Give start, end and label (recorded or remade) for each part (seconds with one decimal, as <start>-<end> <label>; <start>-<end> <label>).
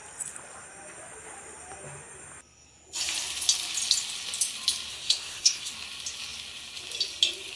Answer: 0.0-4.9 recorded; 4.9-5.7 remade; 5.7-7.6 recorded